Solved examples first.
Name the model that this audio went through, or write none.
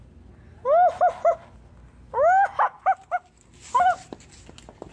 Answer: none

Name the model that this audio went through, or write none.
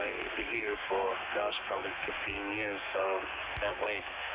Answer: codec, SNAC